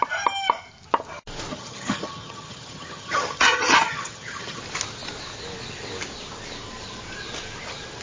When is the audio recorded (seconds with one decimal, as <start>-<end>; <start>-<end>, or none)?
0.0-1.5; 4.6-8.0

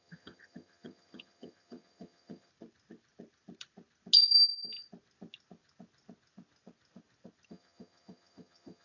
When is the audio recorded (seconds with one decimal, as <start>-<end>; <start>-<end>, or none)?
2.5-7.5